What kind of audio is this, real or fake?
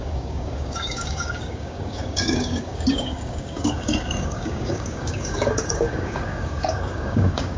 fake